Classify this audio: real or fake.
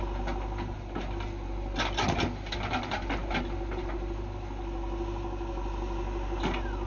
real